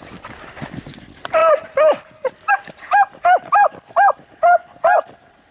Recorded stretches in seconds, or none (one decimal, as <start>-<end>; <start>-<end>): 0.0-5.5